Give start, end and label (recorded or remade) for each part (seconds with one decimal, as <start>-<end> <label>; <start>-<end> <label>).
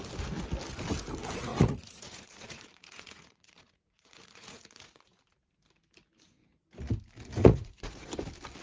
0.0-1.5 recorded; 1.5-5.2 remade; 5.2-7.4 recorded; 7.4-8.1 remade; 8.1-8.6 recorded